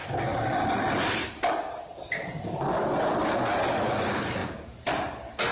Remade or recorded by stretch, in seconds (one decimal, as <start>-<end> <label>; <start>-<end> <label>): 0.0-4.4 recorded; 4.4-4.9 remade; 4.9-5.5 recorded